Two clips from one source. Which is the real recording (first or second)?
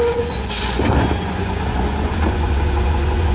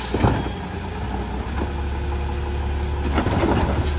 second